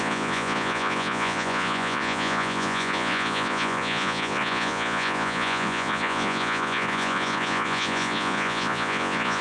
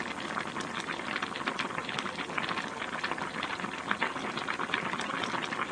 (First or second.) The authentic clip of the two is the second